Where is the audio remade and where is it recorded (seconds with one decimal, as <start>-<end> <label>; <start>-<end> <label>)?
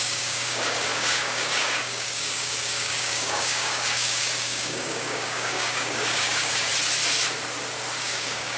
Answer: 0.0-6.7 remade; 6.7-8.0 recorded; 8.0-8.6 remade